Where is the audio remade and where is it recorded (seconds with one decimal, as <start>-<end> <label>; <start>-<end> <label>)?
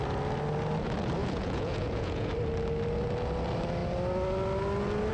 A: 0.0-1.2 recorded; 1.2-2.3 remade; 2.3-5.1 recorded